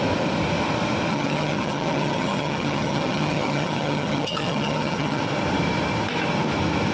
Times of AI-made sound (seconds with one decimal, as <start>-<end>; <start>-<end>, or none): 1.1-5.2